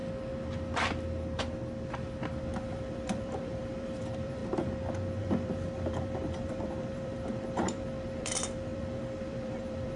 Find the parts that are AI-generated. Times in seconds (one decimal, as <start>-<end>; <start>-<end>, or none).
2.7-4.4; 5.2-10.0